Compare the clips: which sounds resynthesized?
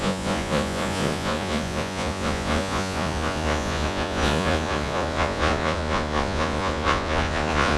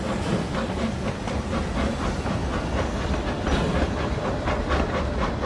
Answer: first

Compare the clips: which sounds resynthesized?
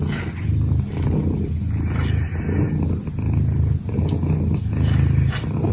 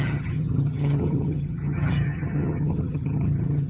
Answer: second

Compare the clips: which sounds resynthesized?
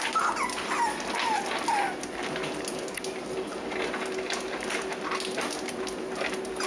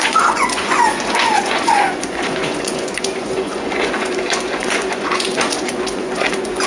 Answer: second